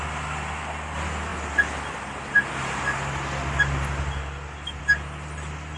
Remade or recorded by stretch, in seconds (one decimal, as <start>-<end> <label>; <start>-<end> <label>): 0.0-5.8 recorded